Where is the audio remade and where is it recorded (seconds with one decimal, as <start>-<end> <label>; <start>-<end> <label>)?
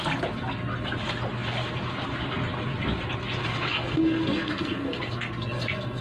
0.0-3.4 recorded; 3.4-6.0 remade